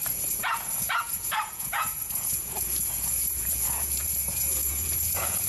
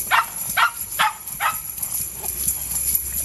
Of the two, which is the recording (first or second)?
second